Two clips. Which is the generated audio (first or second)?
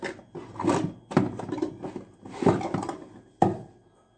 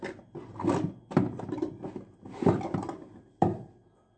second